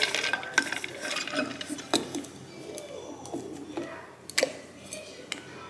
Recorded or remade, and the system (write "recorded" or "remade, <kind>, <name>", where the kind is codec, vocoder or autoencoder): recorded